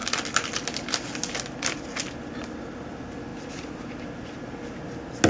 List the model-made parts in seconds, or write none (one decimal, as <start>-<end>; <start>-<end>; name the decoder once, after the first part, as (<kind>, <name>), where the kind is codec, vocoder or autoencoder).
none